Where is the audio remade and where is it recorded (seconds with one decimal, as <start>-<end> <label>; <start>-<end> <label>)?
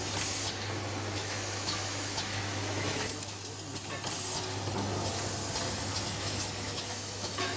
0.0-1.2 recorded; 1.2-3.5 remade; 3.5-5.9 recorded; 5.9-7.6 remade